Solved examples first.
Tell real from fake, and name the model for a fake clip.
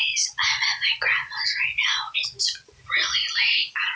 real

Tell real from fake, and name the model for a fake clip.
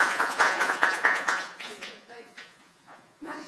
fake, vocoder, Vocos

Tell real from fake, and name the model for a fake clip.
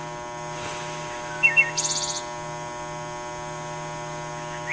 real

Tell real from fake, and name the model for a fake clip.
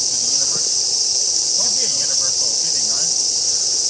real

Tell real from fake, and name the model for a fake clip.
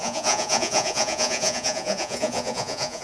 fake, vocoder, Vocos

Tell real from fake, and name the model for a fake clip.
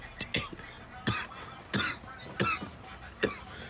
real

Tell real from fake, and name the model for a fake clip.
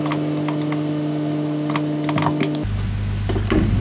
real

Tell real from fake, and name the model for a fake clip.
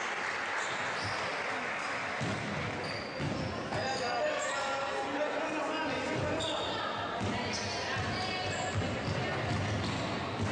real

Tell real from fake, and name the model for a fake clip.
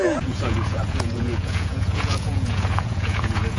fake, vocoder, Vocos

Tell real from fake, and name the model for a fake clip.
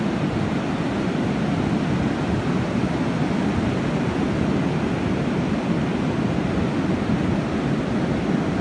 real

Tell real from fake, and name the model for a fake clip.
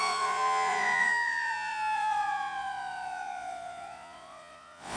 fake, vocoder, Vocos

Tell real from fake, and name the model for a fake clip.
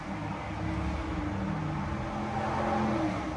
real